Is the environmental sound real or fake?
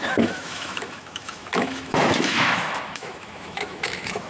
fake